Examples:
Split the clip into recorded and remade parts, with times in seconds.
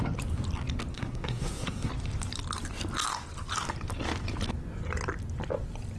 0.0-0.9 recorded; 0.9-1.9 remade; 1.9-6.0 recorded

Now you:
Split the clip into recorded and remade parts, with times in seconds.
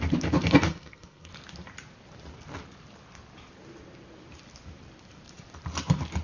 0.0-0.7 recorded; 0.7-1.3 remade; 1.3-6.2 recorded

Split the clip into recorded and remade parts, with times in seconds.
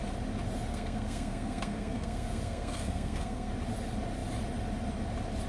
0.0-0.7 recorded; 0.7-3.5 remade; 3.5-5.5 recorded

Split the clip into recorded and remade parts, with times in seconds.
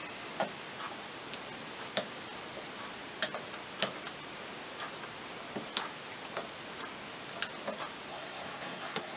0.0-8.1 recorded; 8.1-9.2 remade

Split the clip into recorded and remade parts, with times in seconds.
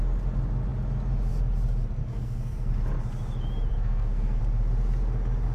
0.0-2.0 recorded; 2.0-2.7 remade; 2.7-3.7 recorded; 3.7-4.4 remade; 4.4-5.5 recorded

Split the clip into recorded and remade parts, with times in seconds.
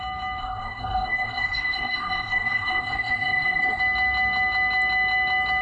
0.0-0.4 recorded; 0.4-3.8 remade; 3.8-5.6 recorded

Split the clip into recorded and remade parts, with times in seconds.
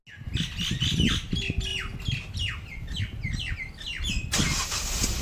0.0-5.2 recorded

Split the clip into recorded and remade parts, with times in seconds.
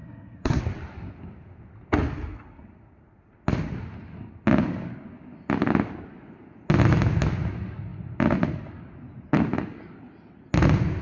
0.0-0.6 remade; 0.6-11.0 recorded